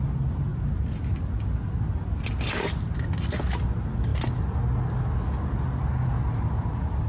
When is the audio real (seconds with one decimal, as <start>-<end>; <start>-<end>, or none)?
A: 0.0-7.1